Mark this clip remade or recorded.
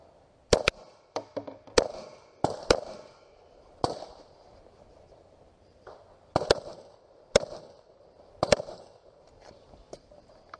remade